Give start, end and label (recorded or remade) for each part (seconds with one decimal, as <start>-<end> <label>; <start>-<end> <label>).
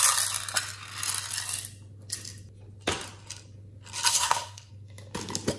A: 0.0-4.1 recorded; 4.1-4.7 remade; 4.7-5.6 recorded